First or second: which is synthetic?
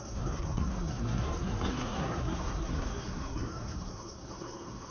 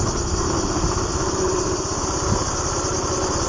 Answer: first